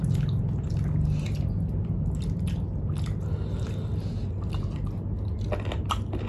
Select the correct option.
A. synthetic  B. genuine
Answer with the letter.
B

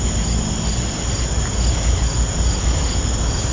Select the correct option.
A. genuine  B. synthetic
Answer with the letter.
A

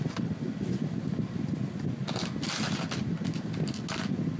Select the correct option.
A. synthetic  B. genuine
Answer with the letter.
B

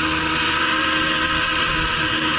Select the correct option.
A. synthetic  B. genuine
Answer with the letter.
B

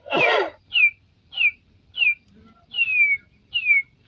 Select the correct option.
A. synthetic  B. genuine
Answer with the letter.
B